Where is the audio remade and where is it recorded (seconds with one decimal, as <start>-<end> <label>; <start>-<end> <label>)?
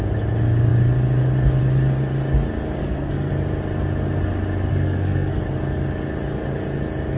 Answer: 0.0-2.8 recorded; 2.8-3.3 remade; 3.3-4.7 recorded; 4.7-5.4 remade; 5.4-7.2 recorded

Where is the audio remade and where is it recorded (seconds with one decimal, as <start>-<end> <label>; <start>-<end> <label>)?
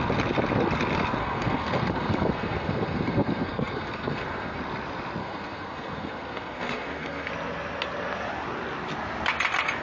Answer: 0.0-1.2 recorded; 1.2-4.6 remade; 4.6-5.2 recorded; 5.2-7.3 remade; 7.3-9.8 recorded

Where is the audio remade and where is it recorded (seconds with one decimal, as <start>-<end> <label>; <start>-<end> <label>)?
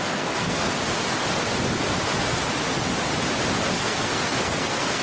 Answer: 0.0-0.7 remade; 0.7-3.7 recorded; 3.7-5.0 remade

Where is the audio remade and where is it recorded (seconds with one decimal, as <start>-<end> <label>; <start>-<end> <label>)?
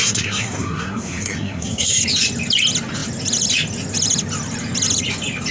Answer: 0.0-2.0 remade; 2.0-5.5 recorded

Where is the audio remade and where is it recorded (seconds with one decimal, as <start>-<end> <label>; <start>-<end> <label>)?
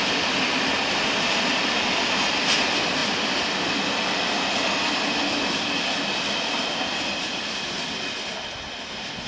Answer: 0.0-9.3 recorded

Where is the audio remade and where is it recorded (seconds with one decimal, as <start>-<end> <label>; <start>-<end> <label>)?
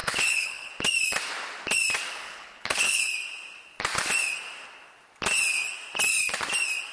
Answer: 0.0-0.7 remade; 0.7-2.1 recorded; 2.1-3.0 remade; 3.0-6.9 recorded